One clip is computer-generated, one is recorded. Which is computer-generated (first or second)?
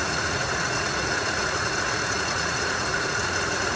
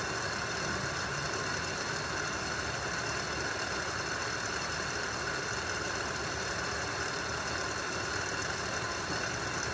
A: first